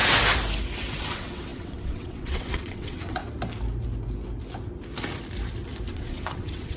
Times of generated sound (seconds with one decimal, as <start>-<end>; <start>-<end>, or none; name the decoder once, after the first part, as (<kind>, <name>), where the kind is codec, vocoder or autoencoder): 1.0-3.2 (vocoder, WaveNeXt); 5.9-6.8